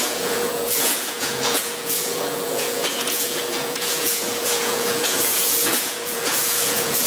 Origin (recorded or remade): remade